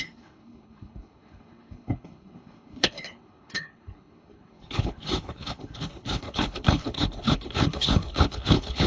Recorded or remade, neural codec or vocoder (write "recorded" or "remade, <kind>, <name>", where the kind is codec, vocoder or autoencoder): remade, codec, HILCodec